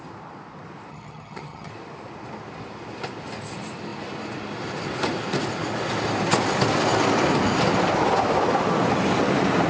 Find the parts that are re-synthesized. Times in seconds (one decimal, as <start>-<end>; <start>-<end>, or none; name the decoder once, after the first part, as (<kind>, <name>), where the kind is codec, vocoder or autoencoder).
0.9-1.7 (vocoder, HiFi-GAN)